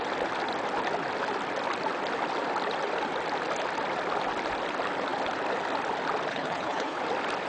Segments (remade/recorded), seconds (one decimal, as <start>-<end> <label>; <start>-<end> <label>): 0.0-6.3 recorded; 6.3-7.0 remade; 7.0-7.5 recorded